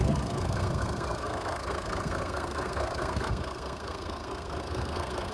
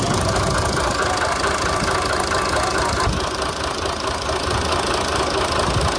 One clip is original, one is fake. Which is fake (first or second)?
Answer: first